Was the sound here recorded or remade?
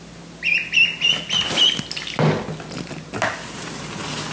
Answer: recorded